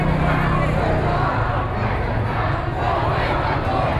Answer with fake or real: real